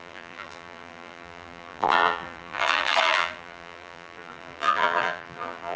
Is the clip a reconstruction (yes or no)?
yes